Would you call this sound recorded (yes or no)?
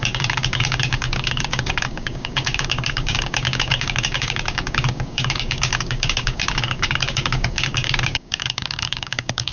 no